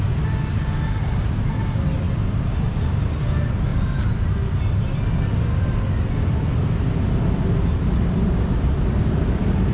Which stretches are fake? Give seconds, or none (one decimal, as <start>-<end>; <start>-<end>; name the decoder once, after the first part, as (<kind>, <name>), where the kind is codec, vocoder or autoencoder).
none